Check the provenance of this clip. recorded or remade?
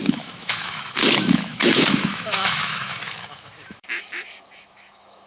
remade